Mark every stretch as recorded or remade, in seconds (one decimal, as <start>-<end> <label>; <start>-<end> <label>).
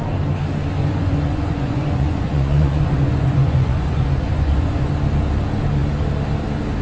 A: 0.0-0.8 recorded; 0.8-4.9 remade; 4.9-6.8 recorded